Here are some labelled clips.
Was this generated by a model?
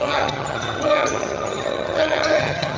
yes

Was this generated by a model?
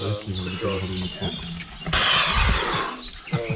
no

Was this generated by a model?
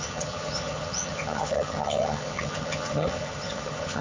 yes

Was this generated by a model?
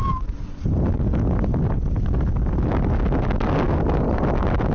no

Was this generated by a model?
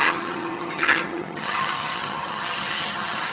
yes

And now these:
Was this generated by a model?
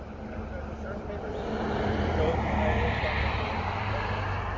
no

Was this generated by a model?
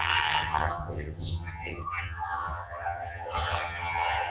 yes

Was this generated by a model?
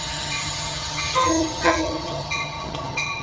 yes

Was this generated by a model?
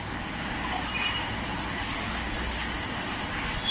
no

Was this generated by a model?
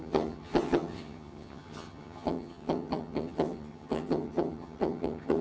yes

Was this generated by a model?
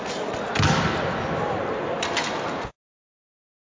no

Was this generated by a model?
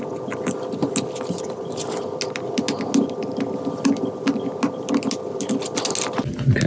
no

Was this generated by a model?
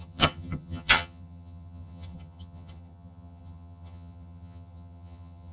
yes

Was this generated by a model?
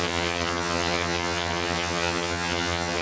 yes